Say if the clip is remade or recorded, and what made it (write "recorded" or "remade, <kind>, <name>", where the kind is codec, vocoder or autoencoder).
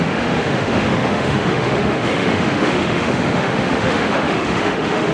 remade, autoencoder, DAC-VAE